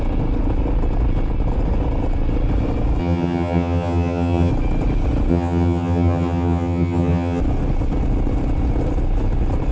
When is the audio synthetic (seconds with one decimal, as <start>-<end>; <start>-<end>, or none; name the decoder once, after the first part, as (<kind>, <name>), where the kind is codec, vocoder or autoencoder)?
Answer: 3.0-4.5 (vocoder, HiFi-GAN); 5.3-7.4